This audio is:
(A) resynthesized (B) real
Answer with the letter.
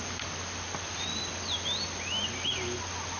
B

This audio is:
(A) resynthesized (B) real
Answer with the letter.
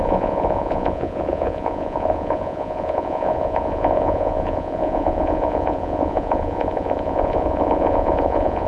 A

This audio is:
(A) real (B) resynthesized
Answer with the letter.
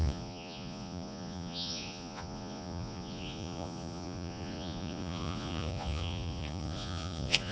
B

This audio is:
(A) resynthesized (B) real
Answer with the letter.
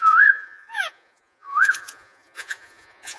A